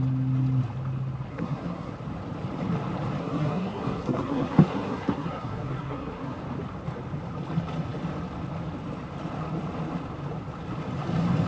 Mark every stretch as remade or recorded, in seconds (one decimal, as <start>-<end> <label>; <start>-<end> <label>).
0.0-1.3 recorded; 1.3-1.9 remade; 1.9-3.2 recorded; 3.2-6.4 remade; 6.4-11.5 recorded